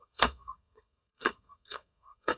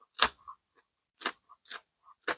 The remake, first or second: first